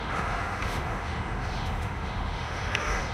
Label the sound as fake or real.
fake